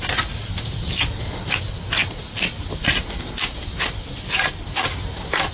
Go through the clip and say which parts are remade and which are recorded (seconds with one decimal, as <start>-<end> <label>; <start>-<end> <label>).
0.0-5.5 recorded